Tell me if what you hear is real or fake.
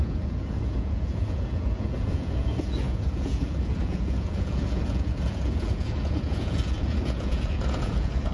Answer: fake